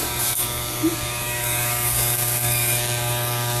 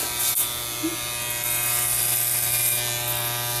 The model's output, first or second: first